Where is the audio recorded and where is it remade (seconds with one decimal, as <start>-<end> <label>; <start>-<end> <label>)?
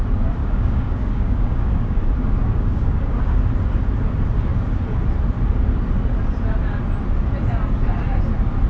0.0-0.4 recorded; 0.4-3.4 remade; 3.4-8.7 recorded